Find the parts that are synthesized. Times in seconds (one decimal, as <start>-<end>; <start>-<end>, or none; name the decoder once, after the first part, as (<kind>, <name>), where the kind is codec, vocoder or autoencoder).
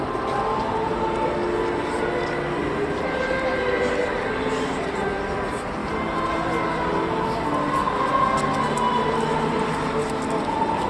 none